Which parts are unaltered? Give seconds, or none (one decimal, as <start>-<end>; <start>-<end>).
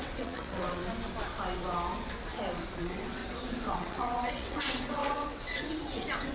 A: 0.8-2.8; 3.2-3.7